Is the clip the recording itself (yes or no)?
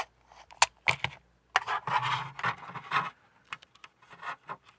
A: yes